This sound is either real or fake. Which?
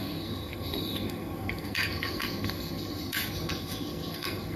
fake